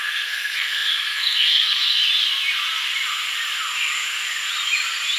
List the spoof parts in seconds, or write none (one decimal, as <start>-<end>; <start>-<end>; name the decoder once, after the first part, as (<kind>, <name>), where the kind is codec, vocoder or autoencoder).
0.0-2.0 (codec, SNAC)